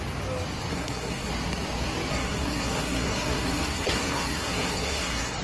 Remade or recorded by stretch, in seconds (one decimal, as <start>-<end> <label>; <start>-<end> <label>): 0.0-0.7 recorded; 0.7-1.3 remade; 1.3-2.1 recorded; 2.1-5.4 remade